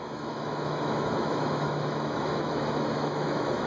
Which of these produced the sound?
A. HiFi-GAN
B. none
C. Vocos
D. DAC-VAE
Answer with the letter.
D